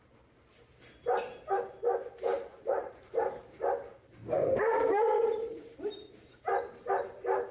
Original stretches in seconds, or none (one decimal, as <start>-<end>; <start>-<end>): 0.0-2.5; 3.4-4.2